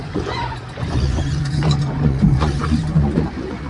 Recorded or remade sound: remade